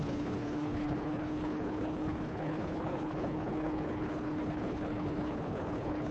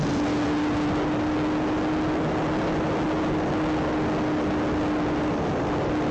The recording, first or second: second